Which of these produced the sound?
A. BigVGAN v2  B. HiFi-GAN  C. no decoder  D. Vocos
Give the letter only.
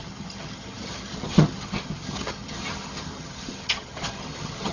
B